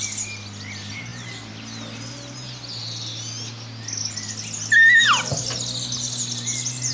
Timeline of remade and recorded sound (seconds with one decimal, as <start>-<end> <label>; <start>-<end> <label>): 0.0-6.9 recorded